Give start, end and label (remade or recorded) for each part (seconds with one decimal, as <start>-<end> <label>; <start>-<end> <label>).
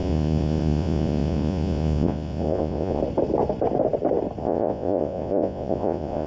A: 0.0-3.0 remade; 3.0-4.4 recorded; 4.4-6.3 remade